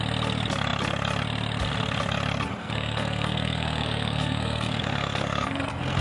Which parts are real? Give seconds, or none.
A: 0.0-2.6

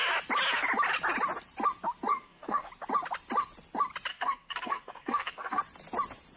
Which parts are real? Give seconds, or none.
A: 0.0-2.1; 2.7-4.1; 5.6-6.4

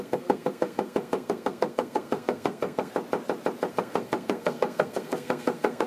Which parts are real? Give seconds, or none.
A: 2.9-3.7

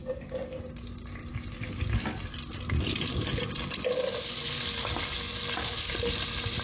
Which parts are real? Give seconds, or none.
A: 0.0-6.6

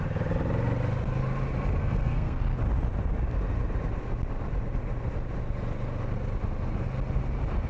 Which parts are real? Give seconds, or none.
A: 0.0-1.8; 2.4-7.7